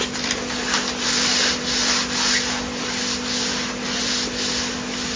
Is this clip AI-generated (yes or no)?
no